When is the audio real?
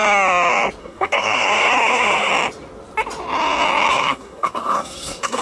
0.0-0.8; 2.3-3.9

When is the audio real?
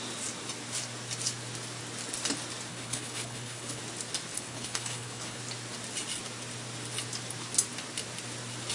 0.0-2.7; 3.8-4.3; 5.4-8.7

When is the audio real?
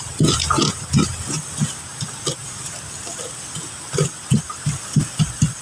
0.0-5.6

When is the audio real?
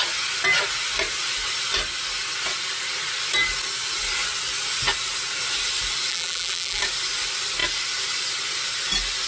0.0-6.1; 6.8-9.3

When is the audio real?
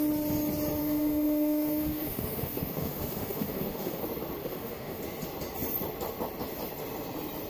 0.0-0.8; 4.0-4.4; 5.0-7.5